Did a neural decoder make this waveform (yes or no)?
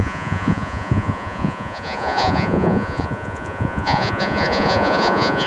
yes